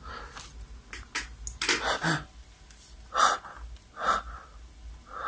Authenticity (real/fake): real